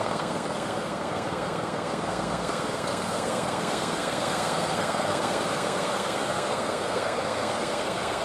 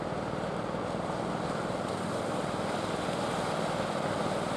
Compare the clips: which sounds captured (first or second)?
second